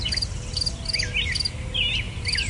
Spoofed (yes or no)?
no